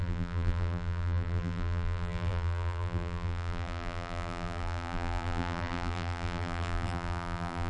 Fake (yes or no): yes